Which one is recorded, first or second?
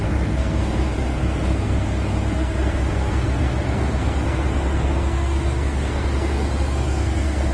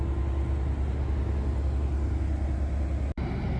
second